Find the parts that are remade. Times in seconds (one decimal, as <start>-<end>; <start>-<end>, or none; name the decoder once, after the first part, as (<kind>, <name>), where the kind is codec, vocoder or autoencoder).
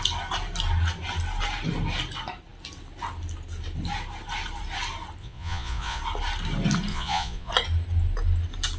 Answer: 5.2-6.0 (vocoder, Vocos); 6.9-7.5